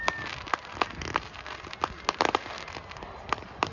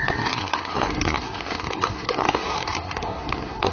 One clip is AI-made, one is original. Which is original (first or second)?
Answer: first